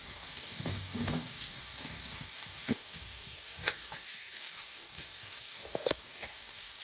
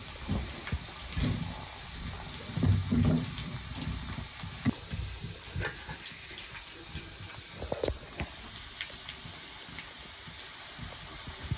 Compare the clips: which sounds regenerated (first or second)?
first